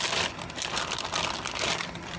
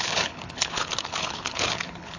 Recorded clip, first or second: first